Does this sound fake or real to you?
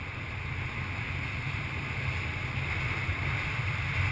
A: real